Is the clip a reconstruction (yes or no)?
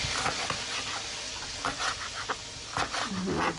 no